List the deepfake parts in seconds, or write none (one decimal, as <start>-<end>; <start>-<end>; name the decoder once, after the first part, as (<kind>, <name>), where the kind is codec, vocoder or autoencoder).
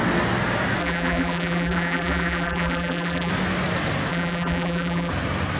0.8-3.3 (vocoder, BigVGAN v2); 4.1-5.1